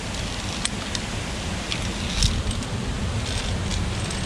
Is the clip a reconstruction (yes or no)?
no